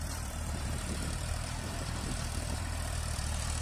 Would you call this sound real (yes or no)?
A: no